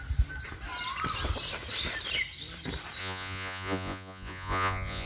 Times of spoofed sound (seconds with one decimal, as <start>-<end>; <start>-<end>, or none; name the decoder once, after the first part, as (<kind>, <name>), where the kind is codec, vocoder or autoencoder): 3.0-5.1 (vocoder, Vocos)